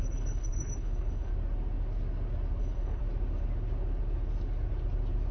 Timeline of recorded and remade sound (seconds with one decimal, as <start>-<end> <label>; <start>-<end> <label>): 0.0-1.3 remade; 1.3-2.6 recorded; 2.6-3.0 remade; 3.0-5.3 recorded